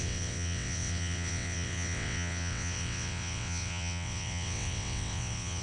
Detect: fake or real fake